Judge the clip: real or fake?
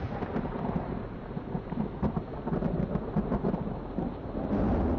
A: real